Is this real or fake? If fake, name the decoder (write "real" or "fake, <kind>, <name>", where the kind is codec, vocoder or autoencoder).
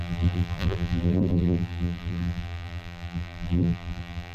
fake, vocoder, BigVGAN v2